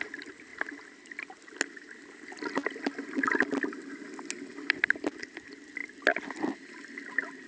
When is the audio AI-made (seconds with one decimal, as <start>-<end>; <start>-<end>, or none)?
none